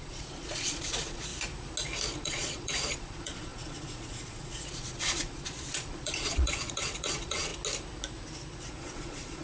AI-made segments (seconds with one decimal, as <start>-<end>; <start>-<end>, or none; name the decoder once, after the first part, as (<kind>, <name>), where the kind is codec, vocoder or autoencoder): 0.0-1.3 (vocoder, Vocos); 2.2-7.5; 8.8-9.4